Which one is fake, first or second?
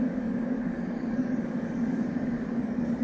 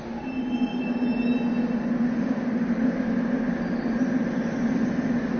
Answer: first